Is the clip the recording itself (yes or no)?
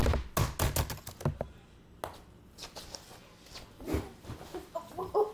yes